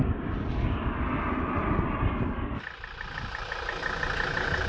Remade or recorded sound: remade